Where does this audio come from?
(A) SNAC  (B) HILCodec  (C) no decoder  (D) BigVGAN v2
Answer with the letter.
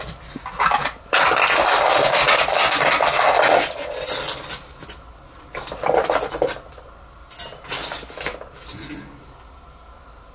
C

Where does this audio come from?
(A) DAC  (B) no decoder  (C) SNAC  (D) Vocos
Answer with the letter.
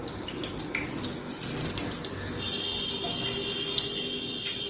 B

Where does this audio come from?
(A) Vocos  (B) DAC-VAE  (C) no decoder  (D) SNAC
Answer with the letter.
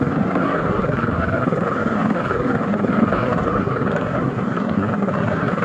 D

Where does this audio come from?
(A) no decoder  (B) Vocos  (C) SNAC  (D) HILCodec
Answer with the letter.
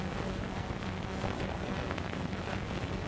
C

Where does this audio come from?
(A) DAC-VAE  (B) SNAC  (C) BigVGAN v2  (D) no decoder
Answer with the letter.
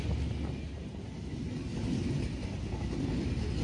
D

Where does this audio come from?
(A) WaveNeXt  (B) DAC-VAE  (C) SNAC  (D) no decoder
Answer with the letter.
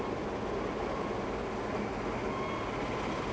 D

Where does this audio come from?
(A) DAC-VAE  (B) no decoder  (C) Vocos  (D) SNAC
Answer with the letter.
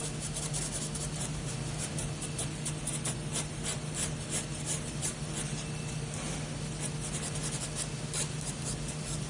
B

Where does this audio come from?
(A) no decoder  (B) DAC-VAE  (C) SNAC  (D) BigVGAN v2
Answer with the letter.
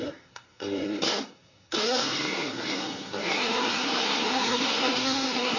C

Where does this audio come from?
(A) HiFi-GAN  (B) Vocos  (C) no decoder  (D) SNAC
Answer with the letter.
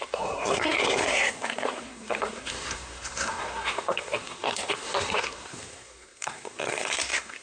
D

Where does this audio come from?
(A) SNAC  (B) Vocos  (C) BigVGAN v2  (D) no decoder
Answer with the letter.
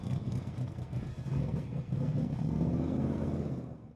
A